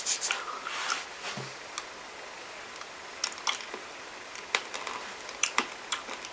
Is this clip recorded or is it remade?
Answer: recorded